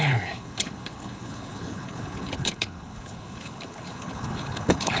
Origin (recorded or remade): remade